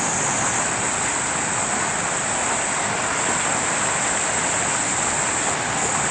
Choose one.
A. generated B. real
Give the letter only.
B